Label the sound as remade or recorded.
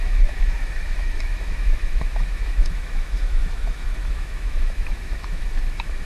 remade